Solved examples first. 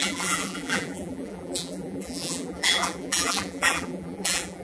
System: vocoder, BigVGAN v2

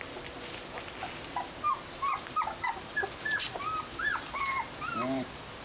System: none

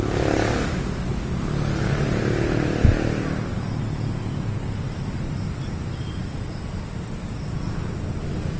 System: none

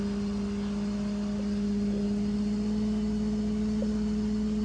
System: none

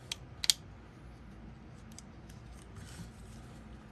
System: none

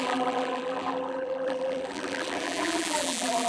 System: vocoder, BigVGAN v2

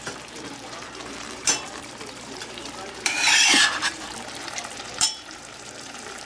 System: vocoder, BigVGAN v2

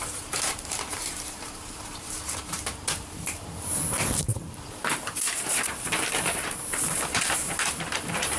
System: vocoder, BigVGAN v2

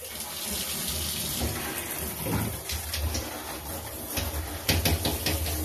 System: none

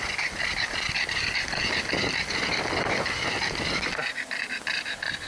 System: none